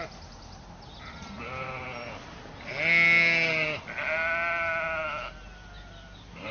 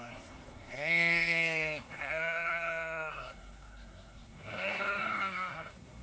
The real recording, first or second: first